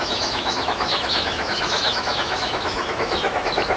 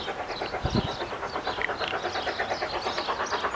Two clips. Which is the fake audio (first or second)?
first